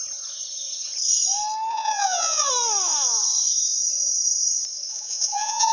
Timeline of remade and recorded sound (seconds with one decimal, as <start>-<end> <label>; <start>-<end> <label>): 0.0-1.7 recorded; 1.7-2.5 remade; 2.5-4.9 recorded; 4.9-5.7 remade

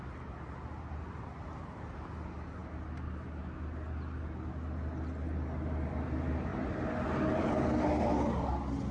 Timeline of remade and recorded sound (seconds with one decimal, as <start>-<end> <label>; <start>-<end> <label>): 0.0-6.5 recorded; 6.5-7.9 remade; 7.9-8.9 recorded

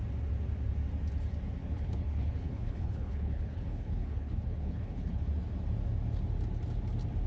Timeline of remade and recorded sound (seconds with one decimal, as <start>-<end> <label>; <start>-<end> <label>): 0.0-1.6 recorded; 1.6-5.2 remade; 5.2-7.3 recorded

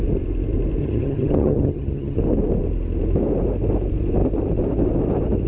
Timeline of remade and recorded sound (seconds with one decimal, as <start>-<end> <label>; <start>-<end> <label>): 0.0-0.8 recorded; 0.8-2.2 remade; 2.2-5.5 recorded

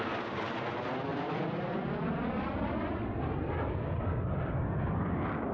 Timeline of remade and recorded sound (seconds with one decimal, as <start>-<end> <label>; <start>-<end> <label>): 0.0-5.5 recorded

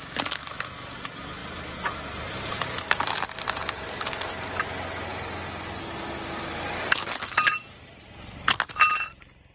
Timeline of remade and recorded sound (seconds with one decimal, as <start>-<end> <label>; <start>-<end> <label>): 0.0-9.5 recorded

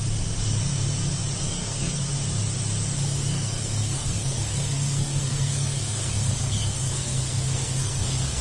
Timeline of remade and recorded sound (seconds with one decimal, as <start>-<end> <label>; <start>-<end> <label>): 0.0-1.4 recorded; 1.4-2.0 remade; 2.0-3.3 recorded; 3.3-8.4 remade